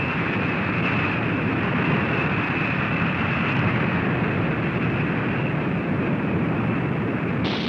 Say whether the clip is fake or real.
fake